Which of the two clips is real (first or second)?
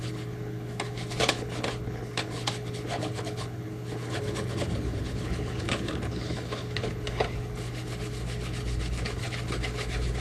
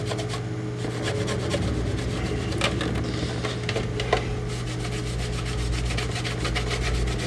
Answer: second